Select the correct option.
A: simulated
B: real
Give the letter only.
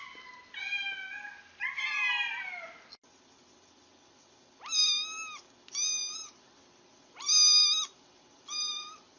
B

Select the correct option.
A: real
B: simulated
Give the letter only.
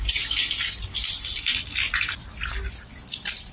A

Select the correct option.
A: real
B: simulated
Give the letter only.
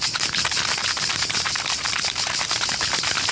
B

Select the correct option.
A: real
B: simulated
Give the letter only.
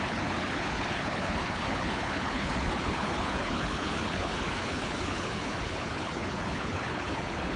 B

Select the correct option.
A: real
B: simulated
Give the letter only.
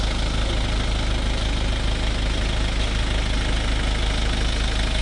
A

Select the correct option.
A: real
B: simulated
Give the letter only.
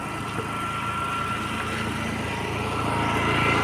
A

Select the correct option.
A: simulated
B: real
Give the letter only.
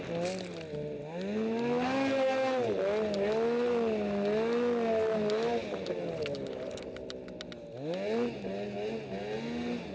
B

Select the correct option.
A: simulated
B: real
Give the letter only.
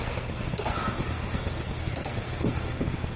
A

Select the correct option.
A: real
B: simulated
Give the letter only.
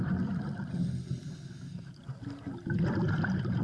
A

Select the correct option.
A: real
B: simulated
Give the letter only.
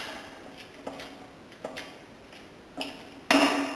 A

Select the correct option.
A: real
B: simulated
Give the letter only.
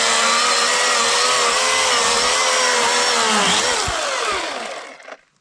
A